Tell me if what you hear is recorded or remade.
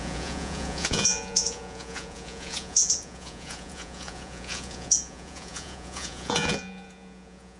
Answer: remade